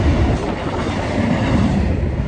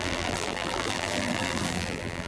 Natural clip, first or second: first